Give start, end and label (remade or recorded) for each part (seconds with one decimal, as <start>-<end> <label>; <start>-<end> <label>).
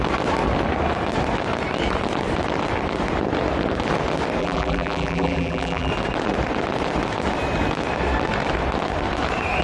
0.0-4.4 recorded; 4.4-5.9 remade; 5.9-9.6 recorded